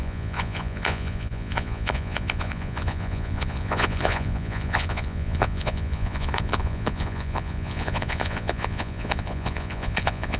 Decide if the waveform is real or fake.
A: fake